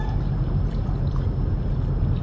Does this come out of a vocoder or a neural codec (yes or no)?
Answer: no